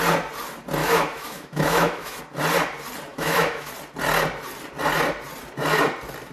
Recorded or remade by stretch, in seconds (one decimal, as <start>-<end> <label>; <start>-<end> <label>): 0.0-0.8 recorded; 0.8-2.2 remade; 2.2-3.1 recorded; 3.1-3.7 remade; 3.7-6.3 recorded